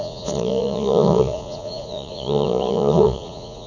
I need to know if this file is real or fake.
fake